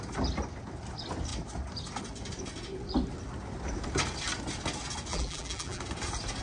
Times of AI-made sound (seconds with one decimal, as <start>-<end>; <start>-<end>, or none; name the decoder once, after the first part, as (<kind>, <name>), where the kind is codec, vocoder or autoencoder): 5.1-5.8 (vocoder, BigVGAN v2)